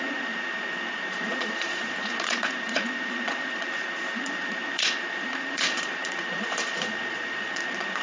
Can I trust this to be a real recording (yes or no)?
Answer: no